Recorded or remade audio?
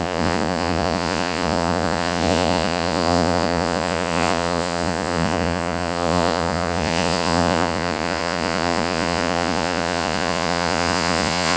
remade